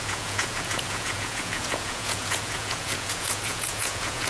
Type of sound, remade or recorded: remade